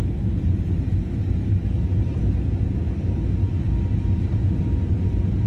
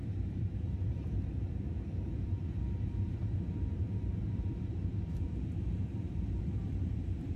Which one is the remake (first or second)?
second